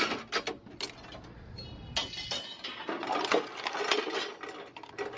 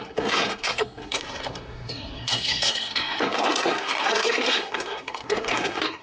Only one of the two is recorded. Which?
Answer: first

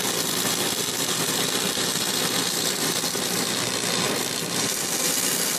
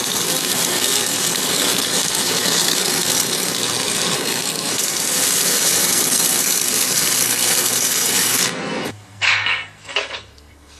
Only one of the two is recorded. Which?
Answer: first